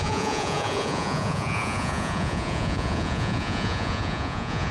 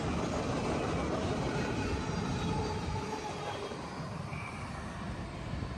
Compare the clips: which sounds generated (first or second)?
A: first